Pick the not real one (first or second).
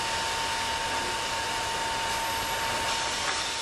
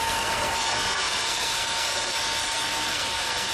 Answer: second